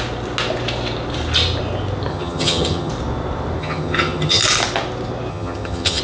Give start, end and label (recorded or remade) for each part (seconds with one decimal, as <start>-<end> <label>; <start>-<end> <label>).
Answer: 0.0-2.1 recorded; 2.1-2.9 remade; 2.9-3.6 recorded; 3.6-4.4 remade; 4.4-5.3 recorded; 5.3-6.0 remade